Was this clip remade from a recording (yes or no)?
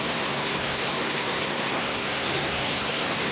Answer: yes